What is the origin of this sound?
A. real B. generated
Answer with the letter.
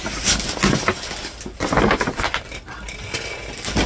A